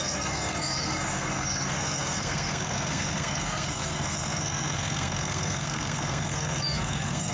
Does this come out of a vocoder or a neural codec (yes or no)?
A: yes